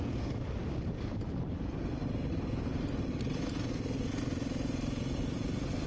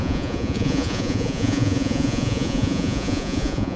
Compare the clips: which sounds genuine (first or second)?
first